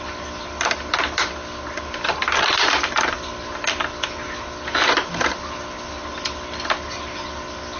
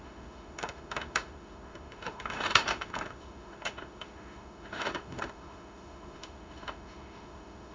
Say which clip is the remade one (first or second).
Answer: second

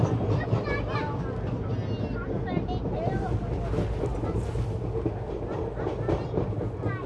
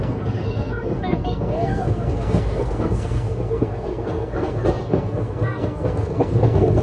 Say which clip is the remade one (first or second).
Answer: second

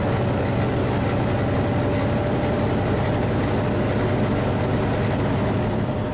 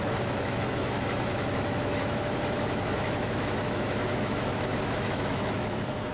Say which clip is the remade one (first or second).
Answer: second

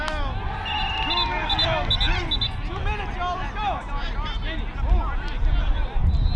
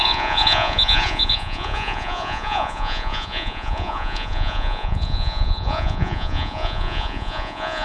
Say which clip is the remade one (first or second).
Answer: second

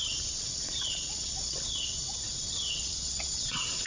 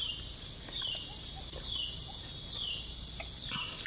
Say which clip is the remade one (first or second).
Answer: first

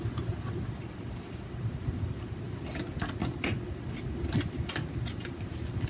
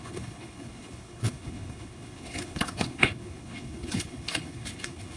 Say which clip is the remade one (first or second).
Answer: second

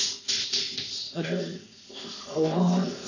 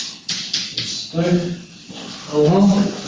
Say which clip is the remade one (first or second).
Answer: first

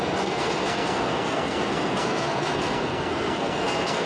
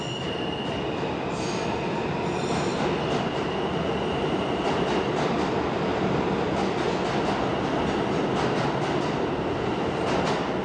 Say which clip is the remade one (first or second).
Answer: first